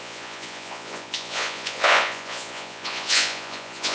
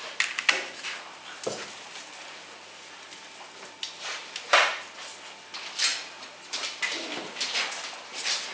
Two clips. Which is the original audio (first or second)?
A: second